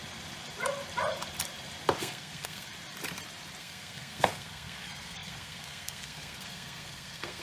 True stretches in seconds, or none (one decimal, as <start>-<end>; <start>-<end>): 0.0-2.0; 2.7-3.6